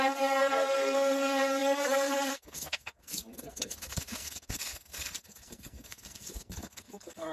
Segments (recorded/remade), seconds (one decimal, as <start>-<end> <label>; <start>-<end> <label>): 0.0-7.3 remade